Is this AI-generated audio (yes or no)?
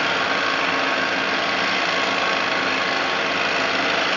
no